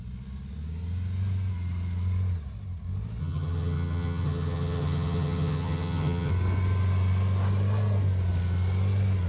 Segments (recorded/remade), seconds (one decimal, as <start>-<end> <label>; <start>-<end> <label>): 0.0-3.2 recorded; 3.2-6.3 remade; 6.3-9.3 recorded